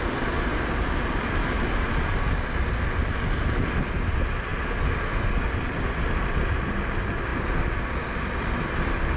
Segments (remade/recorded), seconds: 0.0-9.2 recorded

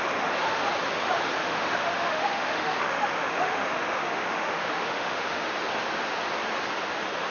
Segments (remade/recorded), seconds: 0.0-1.4 recorded; 1.4-5.5 remade; 5.5-7.3 recorded

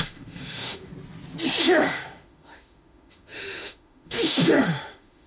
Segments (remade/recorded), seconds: 0.0-0.9 remade; 0.9-1.6 recorded; 1.6-5.3 remade

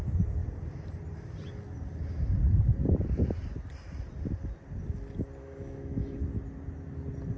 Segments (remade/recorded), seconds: 0.0-5.4 recorded; 5.4-6.2 remade; 6.2-7.4 recorded

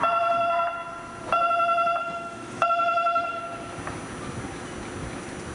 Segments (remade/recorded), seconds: 0.0-2.0 recorded; 2.0-3.4 remade; 3.4-5.5 recorded

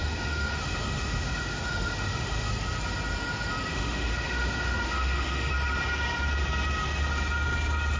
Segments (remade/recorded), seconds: 0.0-2.5 remade; 2.5-3.7 recorded; 3.7-5.5 remade; 5.5-8.0 recorded